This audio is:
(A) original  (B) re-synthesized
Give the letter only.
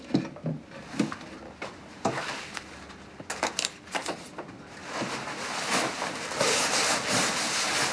A